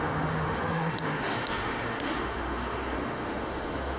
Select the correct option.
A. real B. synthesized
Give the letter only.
B